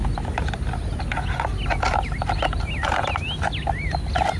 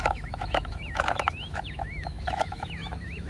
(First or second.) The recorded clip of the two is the first